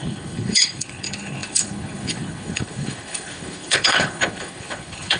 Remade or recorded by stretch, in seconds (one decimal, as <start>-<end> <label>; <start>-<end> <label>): 0.0-5.2 remade